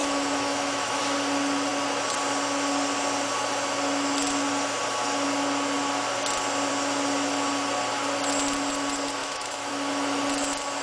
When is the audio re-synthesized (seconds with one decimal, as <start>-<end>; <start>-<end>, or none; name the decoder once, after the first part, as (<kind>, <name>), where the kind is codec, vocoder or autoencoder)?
0.0-1.0 (autoencoder, DAC-VAE); 9.2-9.7